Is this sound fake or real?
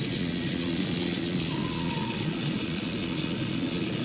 fake